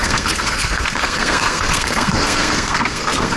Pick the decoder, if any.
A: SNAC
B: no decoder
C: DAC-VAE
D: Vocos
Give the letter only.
A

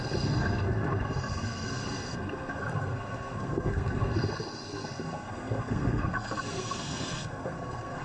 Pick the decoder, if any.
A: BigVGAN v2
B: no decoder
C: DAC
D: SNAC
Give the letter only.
D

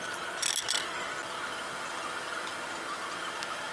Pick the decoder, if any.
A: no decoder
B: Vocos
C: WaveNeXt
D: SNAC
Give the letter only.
A